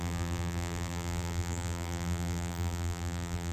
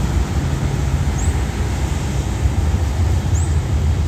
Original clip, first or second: second